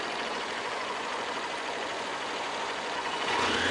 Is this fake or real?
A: fake